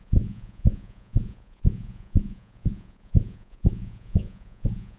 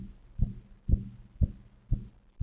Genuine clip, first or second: second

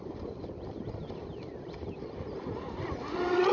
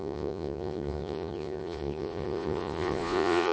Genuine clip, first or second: first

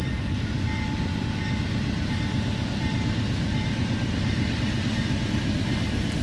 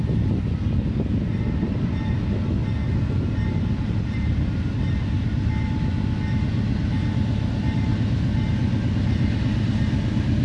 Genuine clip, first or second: second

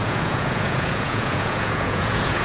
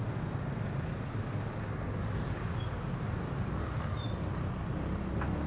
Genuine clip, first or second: second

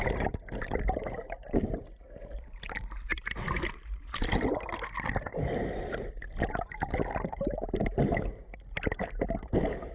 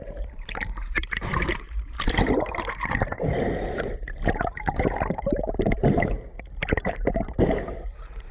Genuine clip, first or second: first